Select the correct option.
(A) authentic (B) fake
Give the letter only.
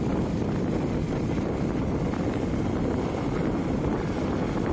A